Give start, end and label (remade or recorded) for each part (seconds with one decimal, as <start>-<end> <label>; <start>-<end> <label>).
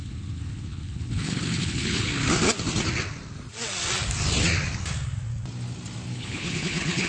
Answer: 0.0-2.1 remade; 2.1-6.1 recorded; 6.1-7.1 remade